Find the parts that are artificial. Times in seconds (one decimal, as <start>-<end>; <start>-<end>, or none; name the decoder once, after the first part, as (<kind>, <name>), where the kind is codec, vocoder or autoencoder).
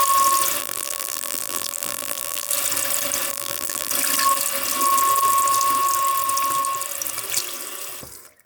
0.6-2.5 (vocoder, BigVGAN v2); 3.3-3.9